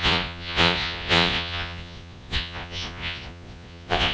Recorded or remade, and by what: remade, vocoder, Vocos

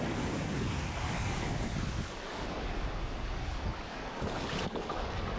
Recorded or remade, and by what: remade, codec, DAC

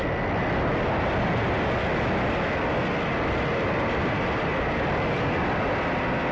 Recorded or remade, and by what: recorded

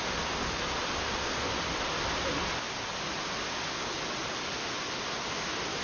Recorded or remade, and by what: recorded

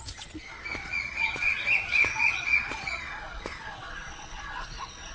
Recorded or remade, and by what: remade, vocoder, Vocos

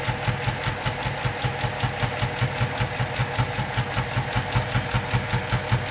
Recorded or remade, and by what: recorded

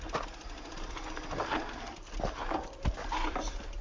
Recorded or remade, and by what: recorded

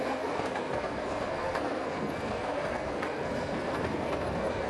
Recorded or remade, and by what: remade, codec, SNAC